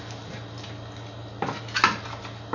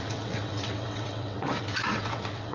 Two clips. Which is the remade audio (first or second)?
second